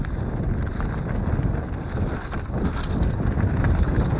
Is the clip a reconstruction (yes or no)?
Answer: no